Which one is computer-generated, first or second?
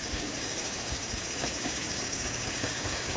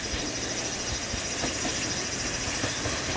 first